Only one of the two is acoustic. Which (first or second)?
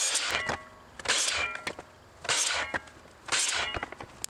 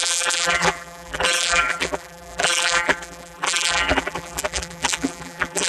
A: first